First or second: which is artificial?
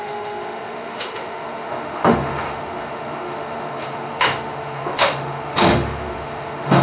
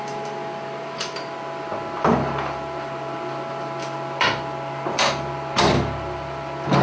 first